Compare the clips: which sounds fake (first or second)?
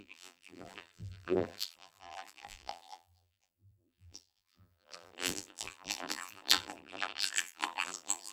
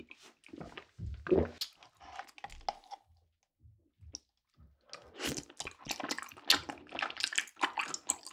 first